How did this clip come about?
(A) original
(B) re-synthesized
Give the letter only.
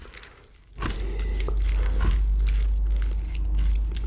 A